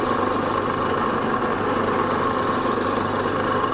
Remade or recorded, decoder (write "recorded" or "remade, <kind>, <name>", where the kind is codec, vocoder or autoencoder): recorded